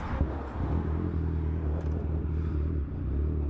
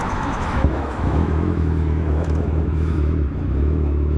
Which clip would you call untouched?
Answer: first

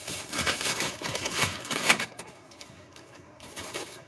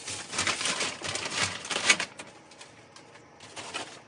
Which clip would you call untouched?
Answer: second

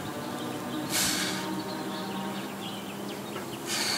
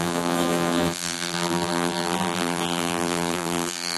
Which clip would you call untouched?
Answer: first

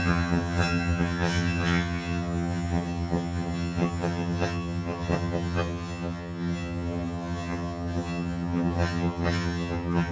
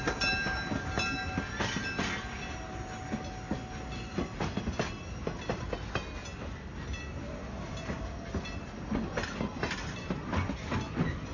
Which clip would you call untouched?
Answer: second